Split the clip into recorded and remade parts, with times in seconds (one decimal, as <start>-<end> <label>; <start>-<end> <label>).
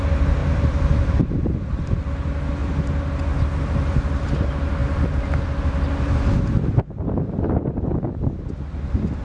0.0-0.4 recorded; 0.4-2.1 remade; 2.1-9.2 recorded